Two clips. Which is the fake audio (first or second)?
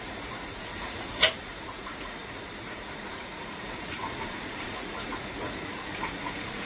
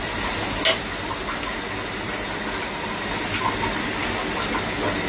first